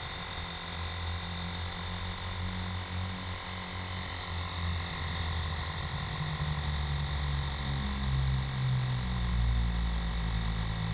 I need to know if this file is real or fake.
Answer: real